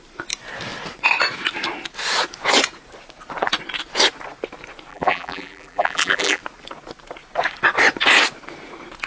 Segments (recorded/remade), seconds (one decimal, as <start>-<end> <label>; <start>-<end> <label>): 0.0-4.9 recorded; 4.9-6.4 remade; 6.4-9.1 recorded